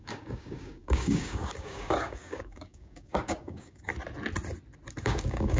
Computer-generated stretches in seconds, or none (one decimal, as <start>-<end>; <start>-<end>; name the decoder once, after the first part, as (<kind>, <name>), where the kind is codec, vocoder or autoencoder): 0.0-3.9 (codec, DAC); 5.0-5.6